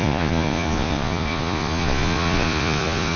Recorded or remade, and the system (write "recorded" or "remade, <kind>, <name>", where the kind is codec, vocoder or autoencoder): remade, vocoder, Vocos